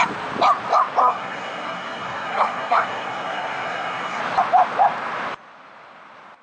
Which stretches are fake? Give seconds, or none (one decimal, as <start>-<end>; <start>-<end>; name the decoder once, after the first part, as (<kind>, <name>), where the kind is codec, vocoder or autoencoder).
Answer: 1.0-4.2 (codec, SNAC)